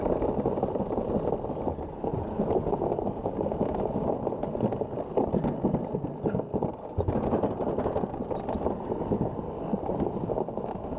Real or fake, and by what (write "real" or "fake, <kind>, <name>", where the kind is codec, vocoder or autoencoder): real